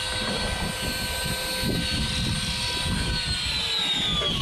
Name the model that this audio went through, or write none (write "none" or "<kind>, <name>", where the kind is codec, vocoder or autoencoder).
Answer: none